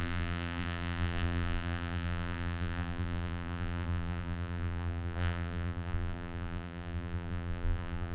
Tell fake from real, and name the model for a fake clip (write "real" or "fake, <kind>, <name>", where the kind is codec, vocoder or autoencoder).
fake, vocoder, BigVGAN v2